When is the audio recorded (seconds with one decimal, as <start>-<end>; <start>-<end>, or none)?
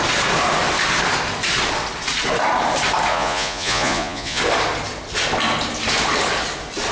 0.0-3.1; 4.4-6.9